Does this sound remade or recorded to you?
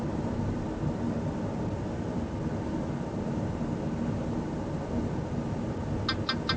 recorded